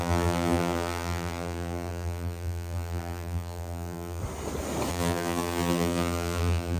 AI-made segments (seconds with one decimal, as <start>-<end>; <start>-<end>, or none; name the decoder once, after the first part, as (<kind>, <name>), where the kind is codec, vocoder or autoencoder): 0.0-4.2 (vocoder, BigVGAN v2); 4.9-6.8